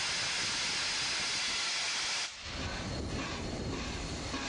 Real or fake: real